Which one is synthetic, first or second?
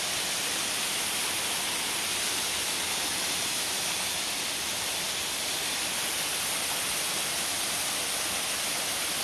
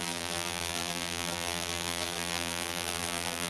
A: second